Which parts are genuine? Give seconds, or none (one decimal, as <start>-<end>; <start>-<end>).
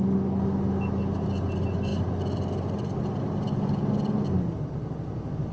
0.0-5.5